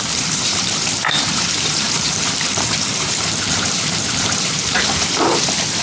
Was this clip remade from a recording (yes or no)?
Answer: yes